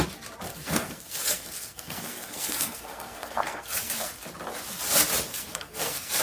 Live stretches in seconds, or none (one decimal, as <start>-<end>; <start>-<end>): 0.0-0.5; 4.1-5.3